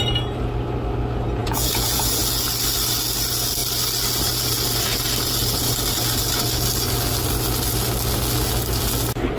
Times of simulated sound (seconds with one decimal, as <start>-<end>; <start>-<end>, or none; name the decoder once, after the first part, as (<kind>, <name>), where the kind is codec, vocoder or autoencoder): 1.4-2.2 (vocoder, Vocos)